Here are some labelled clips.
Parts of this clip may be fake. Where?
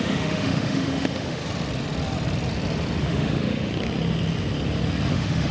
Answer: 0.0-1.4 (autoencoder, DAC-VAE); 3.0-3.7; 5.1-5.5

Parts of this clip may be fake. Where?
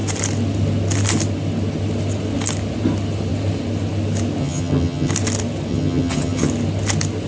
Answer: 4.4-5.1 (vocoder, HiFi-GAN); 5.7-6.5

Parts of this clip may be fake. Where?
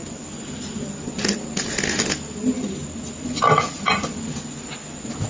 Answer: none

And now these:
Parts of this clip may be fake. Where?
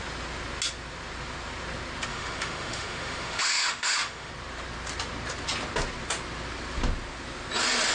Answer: 2.1-4.3 (autoencoder, DAC-VAE)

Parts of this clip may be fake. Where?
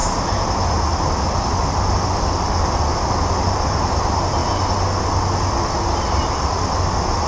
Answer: none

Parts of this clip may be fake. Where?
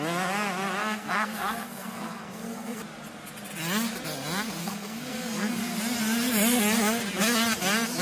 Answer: 0.8-2.8 (codec, SNAC); 4.6-5.8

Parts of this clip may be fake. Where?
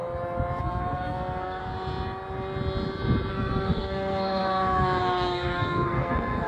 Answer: 0.6-1.6 (codec, SNAC); 3.3-6.5